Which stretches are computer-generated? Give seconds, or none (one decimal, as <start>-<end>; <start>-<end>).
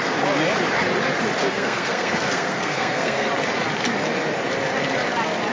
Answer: 1.4-3.3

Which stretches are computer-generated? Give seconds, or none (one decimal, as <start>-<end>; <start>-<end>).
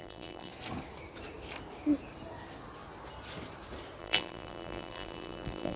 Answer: 0.0-0.5; 4.0-5.8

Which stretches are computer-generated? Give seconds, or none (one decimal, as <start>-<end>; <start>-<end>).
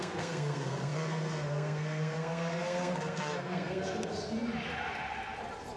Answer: 0.0-4.1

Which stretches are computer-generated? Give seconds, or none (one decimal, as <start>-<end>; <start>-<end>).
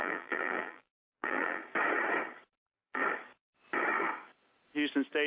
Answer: 0.0-1.6; 2.6-3.0